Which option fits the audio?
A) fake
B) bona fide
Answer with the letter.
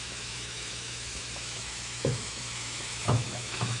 A